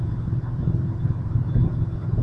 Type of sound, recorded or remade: remade